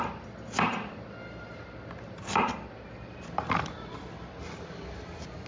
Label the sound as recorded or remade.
recorded